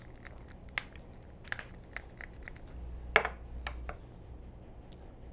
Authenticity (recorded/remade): recorded